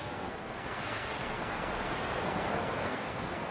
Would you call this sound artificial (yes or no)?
yes